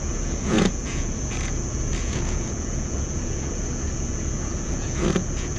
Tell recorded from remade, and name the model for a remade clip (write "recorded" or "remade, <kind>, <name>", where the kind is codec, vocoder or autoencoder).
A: remade, vocoder, Vocos